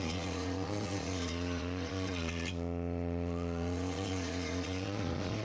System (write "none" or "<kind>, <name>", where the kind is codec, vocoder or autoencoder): vocoder, Vocos